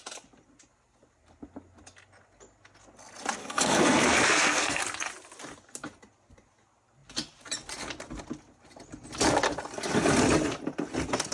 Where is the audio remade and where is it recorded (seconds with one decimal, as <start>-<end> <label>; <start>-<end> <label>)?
0.0-3.4 recorded; 3.4-4.8 remade; 4.8-11.3 recorded